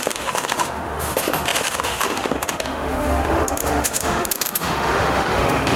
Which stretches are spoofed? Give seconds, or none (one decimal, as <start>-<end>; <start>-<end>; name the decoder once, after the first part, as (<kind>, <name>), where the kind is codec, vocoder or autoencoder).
0.0-5.8 (autoencoder, DAC-VAE)